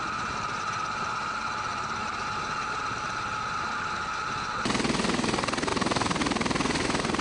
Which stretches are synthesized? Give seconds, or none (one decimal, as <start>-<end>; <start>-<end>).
none